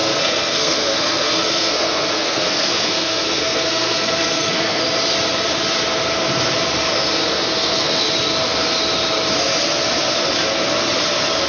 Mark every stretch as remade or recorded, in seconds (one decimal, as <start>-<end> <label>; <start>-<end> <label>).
0.0-4.8 remade; 4.8-7.3 recorded; 7.3-8.1 remade; 8.1-11.5 recorded